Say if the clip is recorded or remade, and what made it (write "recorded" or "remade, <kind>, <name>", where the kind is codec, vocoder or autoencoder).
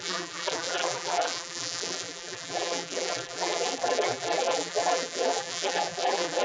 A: remade, vocoder, BigVGAN v2